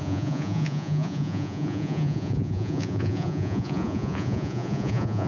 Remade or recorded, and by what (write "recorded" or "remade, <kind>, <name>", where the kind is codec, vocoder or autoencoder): remade, vocoder, Vocos